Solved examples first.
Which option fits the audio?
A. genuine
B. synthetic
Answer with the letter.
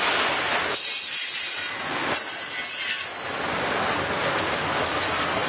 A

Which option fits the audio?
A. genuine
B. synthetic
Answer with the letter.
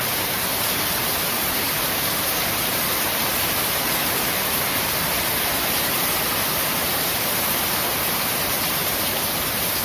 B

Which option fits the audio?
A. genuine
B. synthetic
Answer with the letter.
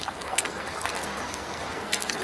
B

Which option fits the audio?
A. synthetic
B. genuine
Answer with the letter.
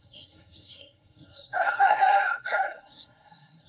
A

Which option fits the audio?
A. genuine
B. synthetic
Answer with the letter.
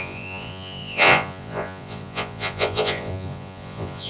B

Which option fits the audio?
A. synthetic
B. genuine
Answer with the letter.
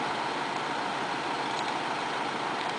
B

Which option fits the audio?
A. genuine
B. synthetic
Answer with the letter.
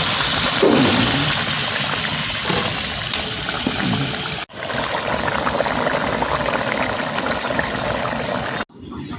A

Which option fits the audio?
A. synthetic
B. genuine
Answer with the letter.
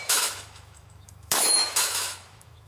A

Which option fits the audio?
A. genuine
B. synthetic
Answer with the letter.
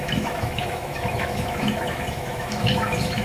B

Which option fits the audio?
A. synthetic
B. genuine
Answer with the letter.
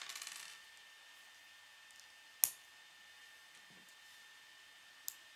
B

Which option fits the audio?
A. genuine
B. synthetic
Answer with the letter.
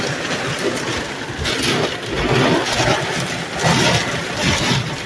A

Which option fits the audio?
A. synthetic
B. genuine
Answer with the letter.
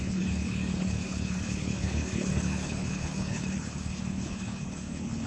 A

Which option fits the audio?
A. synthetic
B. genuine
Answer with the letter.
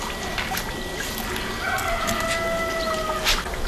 B